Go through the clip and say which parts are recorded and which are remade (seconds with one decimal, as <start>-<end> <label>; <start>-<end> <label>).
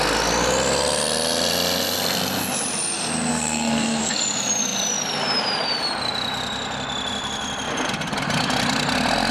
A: 0.0-3.3 recorded; 3.3-4.1 remade; 4.1-9.3 recorded